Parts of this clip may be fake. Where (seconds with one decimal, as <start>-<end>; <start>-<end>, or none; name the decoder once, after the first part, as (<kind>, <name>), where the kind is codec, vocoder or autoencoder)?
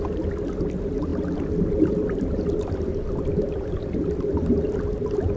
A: 1.1-4.3 (vocoder, BigVGAN v2)